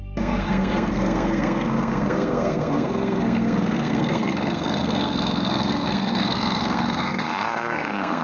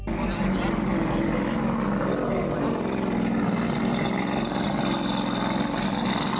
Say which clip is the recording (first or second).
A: second